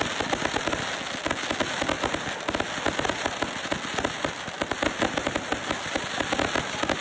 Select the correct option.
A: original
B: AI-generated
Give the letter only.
A